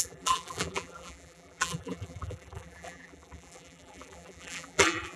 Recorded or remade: remade